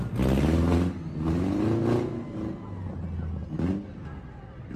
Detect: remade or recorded recorded